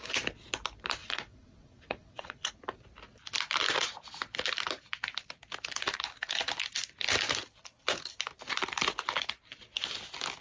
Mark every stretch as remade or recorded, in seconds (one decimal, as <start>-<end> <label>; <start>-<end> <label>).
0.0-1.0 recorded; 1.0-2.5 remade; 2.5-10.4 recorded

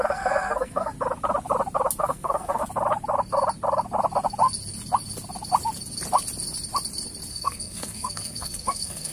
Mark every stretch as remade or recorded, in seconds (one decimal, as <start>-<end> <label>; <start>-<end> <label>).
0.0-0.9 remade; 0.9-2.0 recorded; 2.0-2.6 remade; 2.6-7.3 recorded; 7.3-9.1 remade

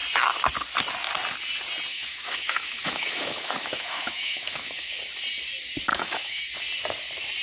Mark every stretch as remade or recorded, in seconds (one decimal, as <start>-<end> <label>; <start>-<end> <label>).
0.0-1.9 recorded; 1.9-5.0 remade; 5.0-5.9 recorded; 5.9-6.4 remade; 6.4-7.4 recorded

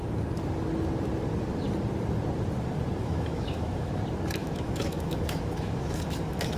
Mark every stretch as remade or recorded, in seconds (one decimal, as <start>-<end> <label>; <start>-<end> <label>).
0.0-3.0 recorded; 3.0-3.9 remade; 3.9-4.4 recorded; 4.4-6.6 remade